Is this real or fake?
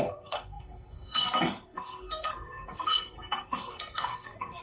fake